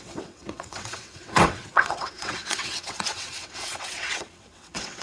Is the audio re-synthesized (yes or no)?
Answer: yes